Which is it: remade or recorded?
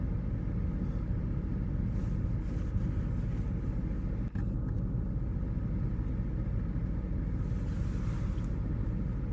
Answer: recorded